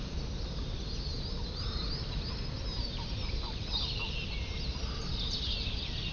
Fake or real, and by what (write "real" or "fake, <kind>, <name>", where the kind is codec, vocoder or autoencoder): real